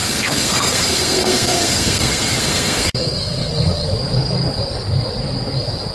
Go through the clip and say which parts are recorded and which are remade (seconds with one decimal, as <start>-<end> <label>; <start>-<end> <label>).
0.0-3.5 remade; 3.5-5.9 recorded